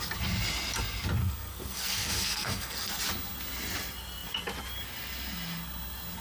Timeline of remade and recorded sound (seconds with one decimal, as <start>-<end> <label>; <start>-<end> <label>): 0.0-1.2 recorded; 1.2-3.0 remade; 3.0-6.2 recorded